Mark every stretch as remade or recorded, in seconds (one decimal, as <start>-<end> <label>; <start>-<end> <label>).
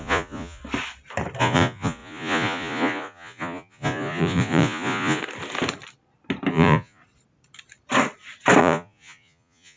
0.0-0.6 remade; 0.6-1.4 recorded; 1.4-5.2 remade; 5.2-6.5 recorded; 6.5-7.0 remade; 7.0-8.6 recorded; 8.6-9.8 remade